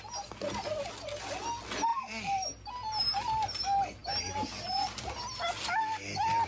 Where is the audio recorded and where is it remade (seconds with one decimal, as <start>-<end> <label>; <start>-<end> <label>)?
0.0-6.5 recorded